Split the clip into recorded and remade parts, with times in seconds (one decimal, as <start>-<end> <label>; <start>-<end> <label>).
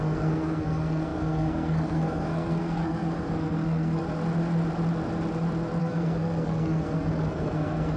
0.0-4.0 remade; 4.0-5.8 recorded; 5.8-8.0 remade